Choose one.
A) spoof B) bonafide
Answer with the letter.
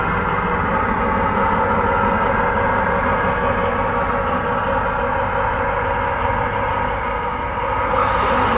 B